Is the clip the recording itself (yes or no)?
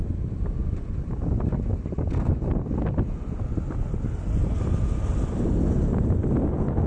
yes